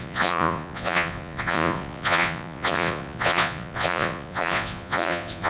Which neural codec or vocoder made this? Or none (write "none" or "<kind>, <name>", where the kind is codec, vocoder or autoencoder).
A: vocoder, Vocos